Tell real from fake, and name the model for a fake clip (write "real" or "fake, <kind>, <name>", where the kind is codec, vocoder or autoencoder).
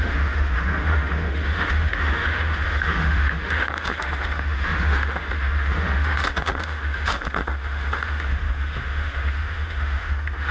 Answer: fake, autoencoder, DAC-VAE